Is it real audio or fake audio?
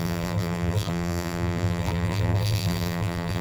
fake